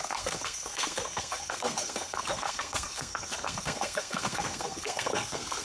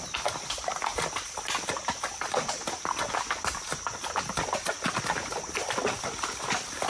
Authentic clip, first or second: second